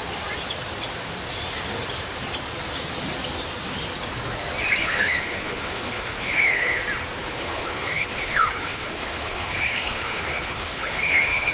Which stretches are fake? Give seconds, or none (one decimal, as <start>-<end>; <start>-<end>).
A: 4.8-6.8; 7.2-11.5